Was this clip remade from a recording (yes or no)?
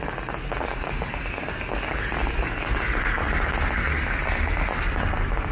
no